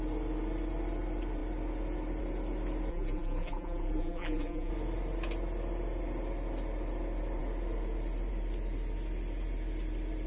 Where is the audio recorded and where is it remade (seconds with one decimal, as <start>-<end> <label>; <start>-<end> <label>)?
0.0-2.9 recorded; 2.9-4.7 remade; 4.7-10.3 recorded